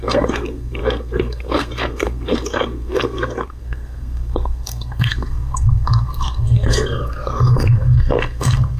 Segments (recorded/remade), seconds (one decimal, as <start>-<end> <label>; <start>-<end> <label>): 0.0-8.8 remade